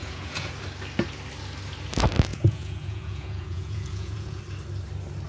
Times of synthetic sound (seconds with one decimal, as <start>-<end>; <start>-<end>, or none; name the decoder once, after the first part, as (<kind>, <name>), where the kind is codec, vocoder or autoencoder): 0.0-0.5 (vocoder, Vocos); 2.3-4.4